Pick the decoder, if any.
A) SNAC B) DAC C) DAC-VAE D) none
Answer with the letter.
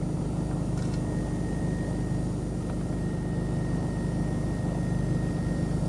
D